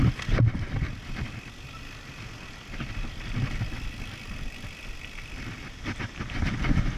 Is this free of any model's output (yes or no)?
yes